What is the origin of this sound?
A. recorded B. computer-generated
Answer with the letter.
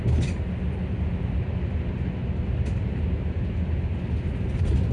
A